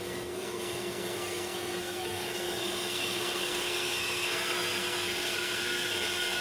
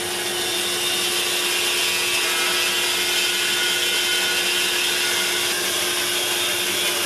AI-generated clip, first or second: first